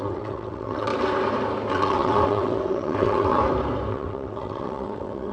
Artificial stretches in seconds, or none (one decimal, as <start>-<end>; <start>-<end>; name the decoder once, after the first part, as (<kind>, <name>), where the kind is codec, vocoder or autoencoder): 0.0-0.9 (vocoder, WaveNeXt); 1.7-3.4; 3.9-5.3